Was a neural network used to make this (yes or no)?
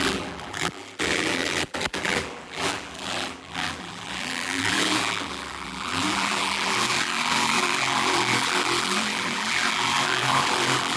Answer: yes